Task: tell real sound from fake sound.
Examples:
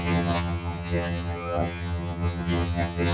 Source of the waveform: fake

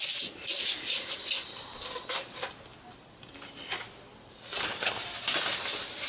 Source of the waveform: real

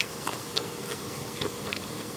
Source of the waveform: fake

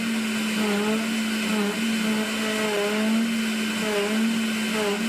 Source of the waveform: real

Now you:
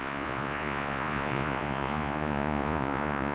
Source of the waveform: fake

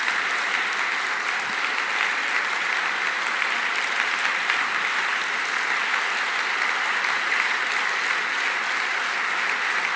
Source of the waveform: real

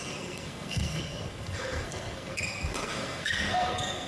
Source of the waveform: fake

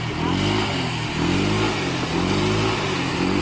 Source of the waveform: real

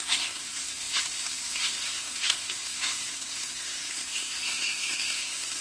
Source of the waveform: fake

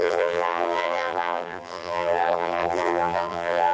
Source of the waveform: fake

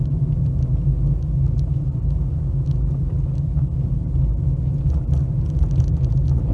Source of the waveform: real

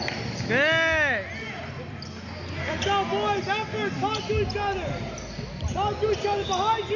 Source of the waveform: real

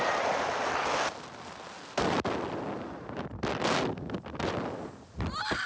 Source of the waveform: real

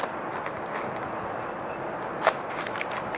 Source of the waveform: real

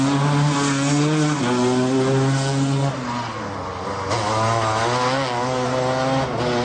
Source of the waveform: real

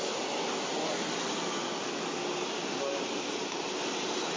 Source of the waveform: real